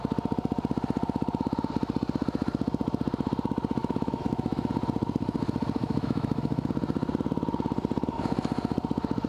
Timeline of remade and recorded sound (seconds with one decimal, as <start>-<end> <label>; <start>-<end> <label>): 0.0-3.8 recorded; 3.8-4.7 remade; 4.7-5.8 recorded; 5.8-6.7 remade; 6.7-9.3 recorded